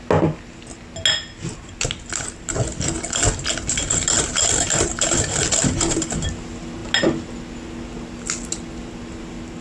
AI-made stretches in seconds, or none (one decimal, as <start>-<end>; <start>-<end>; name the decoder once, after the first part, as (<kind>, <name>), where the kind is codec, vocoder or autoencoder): 3.8-6.3 (vocoder, BigVGAN v2)

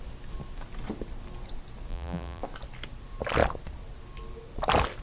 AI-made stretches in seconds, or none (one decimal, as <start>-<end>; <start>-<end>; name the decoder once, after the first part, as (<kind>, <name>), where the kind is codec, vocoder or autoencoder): 1.9-2.4 (vocoder, BigVGAN v2)

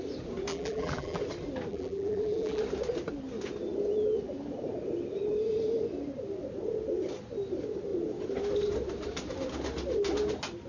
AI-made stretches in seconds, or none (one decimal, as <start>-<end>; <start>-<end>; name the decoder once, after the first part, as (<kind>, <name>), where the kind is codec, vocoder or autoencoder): 0.5-1.2 (vocoder, BigVGAN v2); 1.7-2.6